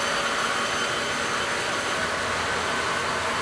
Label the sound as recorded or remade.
recorded